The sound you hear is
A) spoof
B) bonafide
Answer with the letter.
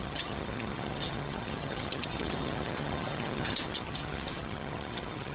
A